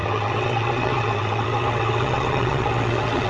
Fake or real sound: fake